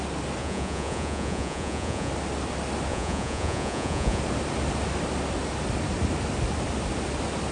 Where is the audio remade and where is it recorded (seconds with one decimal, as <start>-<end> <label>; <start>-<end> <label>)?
0.0-0.4 recorded; 0.4-2.1 remade; 2.1-2.9 recorded; 2.9-4.2 remade; 4.2-7.5 recorded